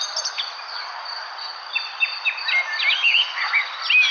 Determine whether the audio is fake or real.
real